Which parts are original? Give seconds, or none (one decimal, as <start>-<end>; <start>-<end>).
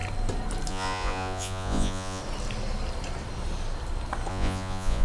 0.0-0.7; 2.2-4.3